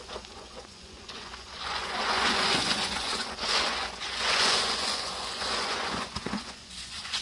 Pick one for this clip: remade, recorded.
remade